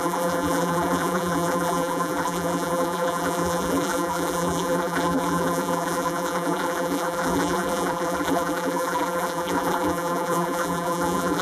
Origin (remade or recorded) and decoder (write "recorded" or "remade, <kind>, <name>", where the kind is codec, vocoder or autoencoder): remade, vocoder, BigVGAN v2